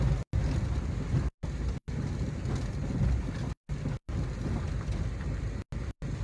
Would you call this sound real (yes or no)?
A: yes